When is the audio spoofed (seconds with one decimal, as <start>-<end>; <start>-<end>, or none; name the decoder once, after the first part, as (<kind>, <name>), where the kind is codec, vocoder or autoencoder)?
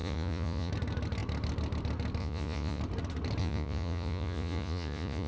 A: 0.0-0.7 (vocoder, Vocos); 2.2-2.8; 3.4-5.3